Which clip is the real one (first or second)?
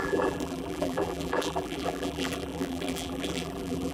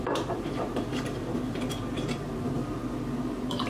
second